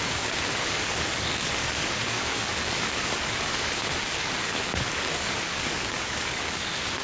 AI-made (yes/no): yes